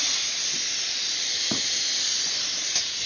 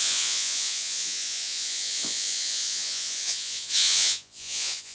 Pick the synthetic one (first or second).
second